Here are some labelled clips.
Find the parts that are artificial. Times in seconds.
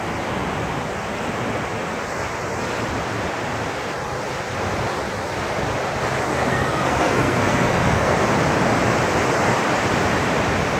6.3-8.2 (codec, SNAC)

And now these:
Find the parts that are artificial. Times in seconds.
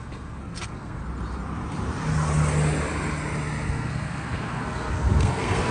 0.0-1.0 (codec, SNAC); 3.7-5.7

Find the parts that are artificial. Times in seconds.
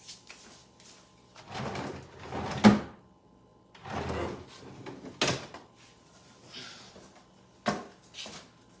none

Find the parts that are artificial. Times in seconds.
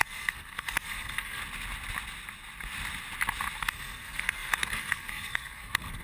0.0-1.4 (codec, SNAC); 3.6-6.0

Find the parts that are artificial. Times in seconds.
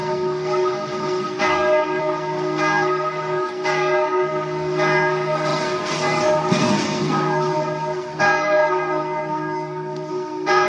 0.0-10.7 (codec, SNAC)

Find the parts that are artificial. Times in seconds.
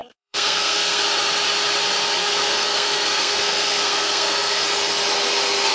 0.0-1.0 (codec, SNAC); 2.2-4.6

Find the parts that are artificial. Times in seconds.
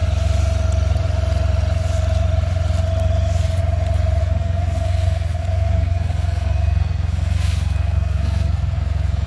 4.2-9.3 (codec, SNAC)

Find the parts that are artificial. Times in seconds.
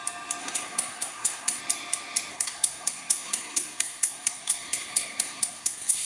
0.4-1.6 (codec, SNAC); 2.3-6.1